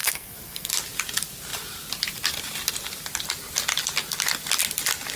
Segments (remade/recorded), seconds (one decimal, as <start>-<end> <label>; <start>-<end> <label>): 0.0-0.7 remade; 0.7-5.2 recorded